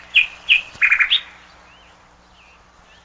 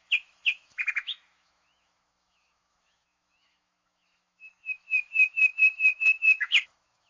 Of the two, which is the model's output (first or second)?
second